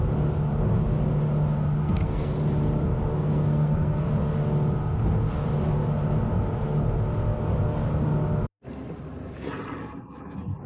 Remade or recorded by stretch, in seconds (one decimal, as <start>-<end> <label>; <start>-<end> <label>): 0.0-1.8 recorded; 1.8-2.3 remade; 2.3-3.1 recorded; 3.1-4.1 remade; 4.1-10.7 recorded

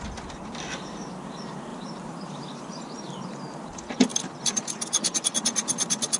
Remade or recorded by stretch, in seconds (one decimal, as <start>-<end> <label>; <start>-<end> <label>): 0.0-1.7 recorded; 1.7-2.8 remade; 2.8-6.2 recorded

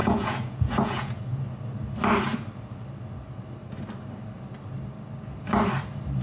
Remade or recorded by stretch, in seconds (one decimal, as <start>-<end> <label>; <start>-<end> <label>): 0.0-1.2 remade; 1.2-6.2 recorded

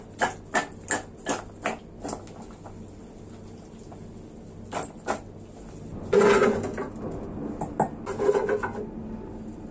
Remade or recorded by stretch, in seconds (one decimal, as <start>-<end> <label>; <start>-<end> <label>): 0.0-5.9 recorded; 5.9-6.6 remade; 6.6-9.7 recorded

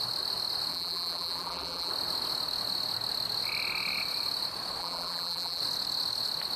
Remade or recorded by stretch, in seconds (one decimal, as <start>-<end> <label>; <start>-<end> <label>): 0.0-0.7 recorded; 0.7-1.9 remade; 1.9-4.8 recorded; 4.8-5.6 remade; 5.6-6.6 recorded